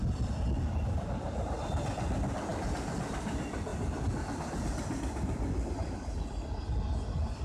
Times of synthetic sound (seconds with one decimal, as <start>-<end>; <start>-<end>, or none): none